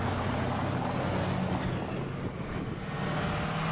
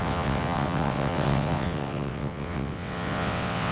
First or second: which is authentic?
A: first